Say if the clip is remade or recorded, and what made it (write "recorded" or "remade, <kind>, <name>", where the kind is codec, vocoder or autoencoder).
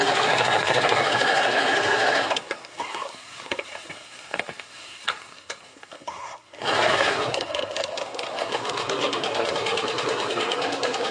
remade, codec, SNAC